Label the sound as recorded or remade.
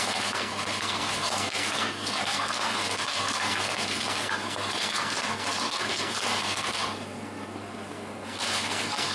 remade